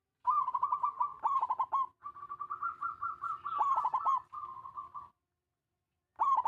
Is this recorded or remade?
recorded